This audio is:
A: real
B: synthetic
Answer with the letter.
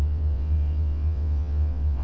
B